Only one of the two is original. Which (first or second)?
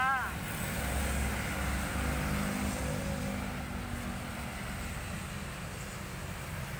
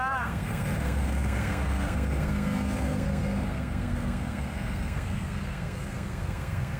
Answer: first